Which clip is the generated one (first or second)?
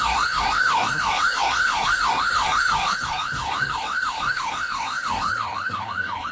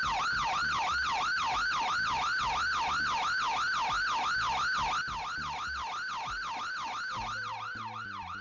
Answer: first